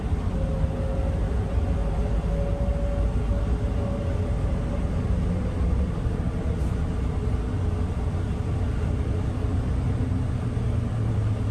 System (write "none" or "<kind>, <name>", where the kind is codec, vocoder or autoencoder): none